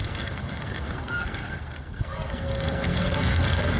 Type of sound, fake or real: fake